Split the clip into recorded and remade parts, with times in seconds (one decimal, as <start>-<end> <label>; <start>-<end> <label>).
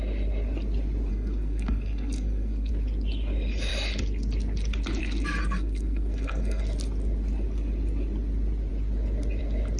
0.0-1.1 recorded; 1.1-2.7 remade; 2.7-5.4 recorded; 5.4-6.6 remade; 6.6-9.8 recorded